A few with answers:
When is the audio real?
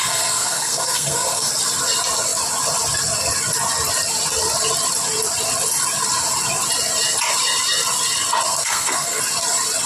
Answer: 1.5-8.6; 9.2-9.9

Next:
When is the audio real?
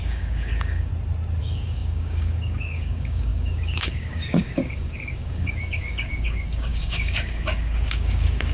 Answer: 0.9-1.4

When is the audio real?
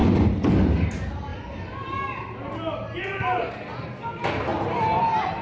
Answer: 0.8-5.4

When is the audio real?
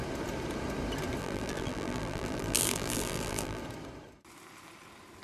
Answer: 0.0-1.2; 3.6-5.2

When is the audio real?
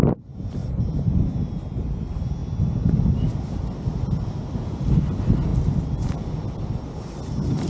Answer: 0.0-7.7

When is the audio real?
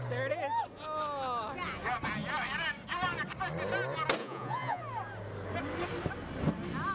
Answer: 0.0-4.2; 4.8-6.9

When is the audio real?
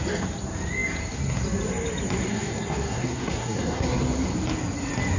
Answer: 0.0-2.3; 4.0-5.2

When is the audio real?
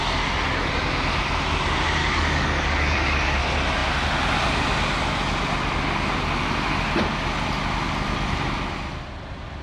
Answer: 0.0-2.0; 3.4-9.6